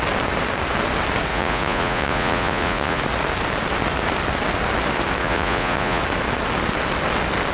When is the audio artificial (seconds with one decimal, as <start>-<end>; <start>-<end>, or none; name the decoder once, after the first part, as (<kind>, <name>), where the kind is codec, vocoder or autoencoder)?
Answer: 1.3-3.0 (vocoder, Vocos); 5.2-6.0